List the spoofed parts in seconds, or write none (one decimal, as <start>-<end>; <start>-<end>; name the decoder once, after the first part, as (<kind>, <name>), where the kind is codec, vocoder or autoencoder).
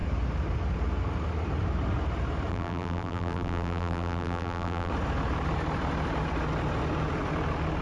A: 2.5-4.9 (vocoder, BigVGAN v2)